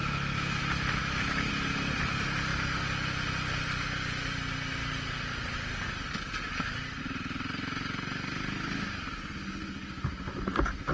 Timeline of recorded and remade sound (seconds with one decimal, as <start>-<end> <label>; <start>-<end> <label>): 0.0-0.6 remade; 0.6-1.0 recorded; 1.0-1.5 remade; 1.5-10.9 recorded